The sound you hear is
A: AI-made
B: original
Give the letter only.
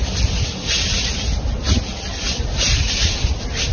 B